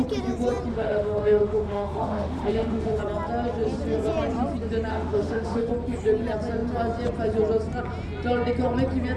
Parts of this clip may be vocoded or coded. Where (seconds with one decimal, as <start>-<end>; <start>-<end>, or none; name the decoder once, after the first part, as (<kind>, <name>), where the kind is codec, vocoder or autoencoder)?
0.7-3.0 (autoencoder, DAC-VAE); 4.9-5.7